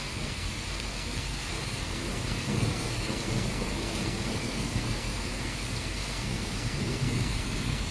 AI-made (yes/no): yes